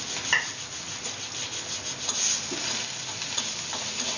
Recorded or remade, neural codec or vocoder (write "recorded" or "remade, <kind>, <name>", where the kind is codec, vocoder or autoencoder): recorded